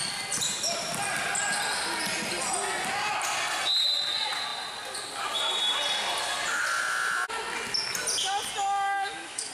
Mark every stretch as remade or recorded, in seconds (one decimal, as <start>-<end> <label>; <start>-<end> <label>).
0.0-8.6 recorded; 8.6-9.5 remade